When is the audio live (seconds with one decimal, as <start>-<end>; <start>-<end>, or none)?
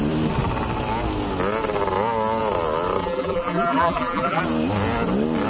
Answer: 0.0-3.0; 4.4-5.5